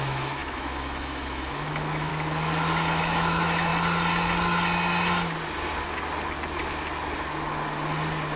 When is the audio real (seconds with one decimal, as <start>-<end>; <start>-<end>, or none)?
2.1-3.0; 3.7-8.4